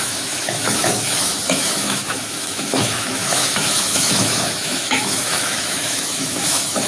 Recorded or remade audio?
remade